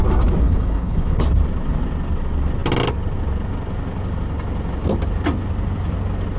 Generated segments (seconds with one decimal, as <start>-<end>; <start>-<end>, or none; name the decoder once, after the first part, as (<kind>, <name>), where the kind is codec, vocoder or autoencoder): 0.4-1.2 (codec, HILCodec)